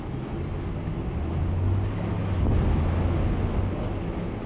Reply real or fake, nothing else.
real